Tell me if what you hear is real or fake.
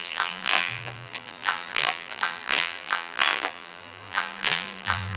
fake